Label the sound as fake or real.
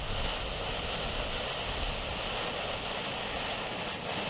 real